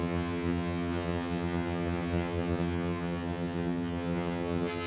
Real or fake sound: fake